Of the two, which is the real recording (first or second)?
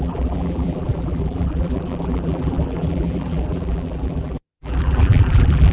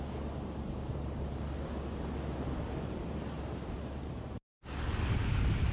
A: second